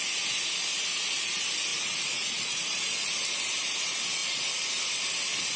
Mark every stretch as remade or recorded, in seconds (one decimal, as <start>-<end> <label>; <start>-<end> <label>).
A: 0.0-1.7 recorded; 1.7-3.3 remade; 3.3-4.2 recorded; 4.2-4.8 remade; 4.8-5.6 recorded